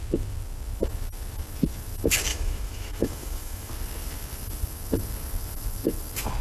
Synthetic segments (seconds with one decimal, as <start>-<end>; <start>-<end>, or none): 2.3-3.7